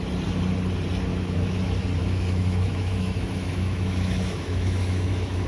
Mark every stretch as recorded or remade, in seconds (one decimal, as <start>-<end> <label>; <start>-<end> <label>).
0.0-1.1 recorded; 1.1-1.6 remade; 1.6-2.0 recorded; 2.0-5.5 remade